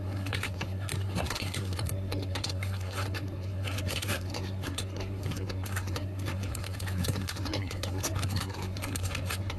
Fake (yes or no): yes